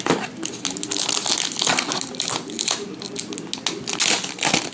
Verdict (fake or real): real